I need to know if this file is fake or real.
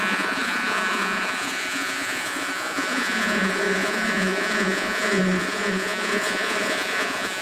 fake